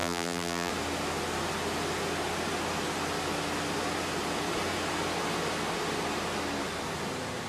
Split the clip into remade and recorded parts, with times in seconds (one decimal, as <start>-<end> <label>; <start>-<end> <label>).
0.0-0.7 remade; 0.7-7.5 recorded